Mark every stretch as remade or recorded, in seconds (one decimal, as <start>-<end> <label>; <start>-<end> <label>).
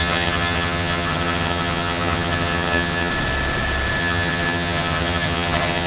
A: 0.0-3.1 remade; 3.1-4.0 recorded; 4.0-5.9 remade